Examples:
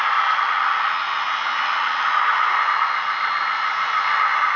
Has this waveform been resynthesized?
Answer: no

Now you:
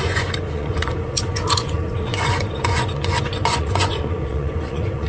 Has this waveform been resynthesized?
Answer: yes